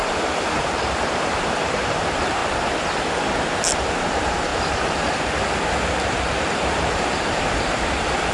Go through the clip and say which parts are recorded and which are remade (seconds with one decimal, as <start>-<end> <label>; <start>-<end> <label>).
0.0-2.4 remade; 2.4-3.9 recorded; 3.9-4.5 remade; 4.5-6.0 recorded; 6.0-8.3 remade